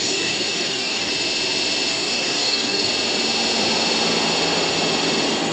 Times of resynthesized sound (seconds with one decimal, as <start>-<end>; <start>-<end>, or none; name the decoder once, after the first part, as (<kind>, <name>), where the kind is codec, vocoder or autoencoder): 0.0-1.1 (codec, DAC); 1.9-2.9